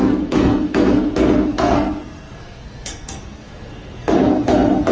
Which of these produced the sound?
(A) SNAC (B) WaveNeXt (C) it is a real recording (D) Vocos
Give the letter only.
A